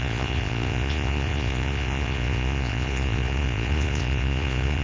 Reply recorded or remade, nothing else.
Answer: remade